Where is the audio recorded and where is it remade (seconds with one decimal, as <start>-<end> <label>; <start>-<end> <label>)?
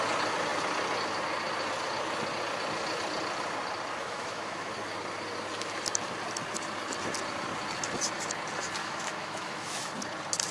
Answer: 0.0-4.0 recorded; 4.0-4.7 remade; 4.7-8.8 recorded; 8.8-9.9 remade; 9.9-10.5 recorded